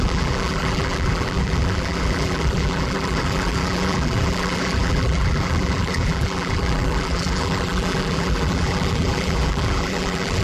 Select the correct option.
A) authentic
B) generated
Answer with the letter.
B